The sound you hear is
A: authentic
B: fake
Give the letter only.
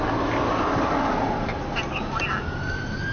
A